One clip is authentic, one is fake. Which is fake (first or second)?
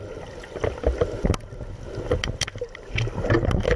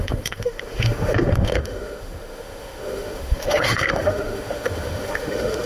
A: second